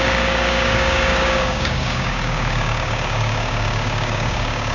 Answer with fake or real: fake